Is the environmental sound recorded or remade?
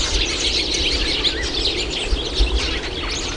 recorded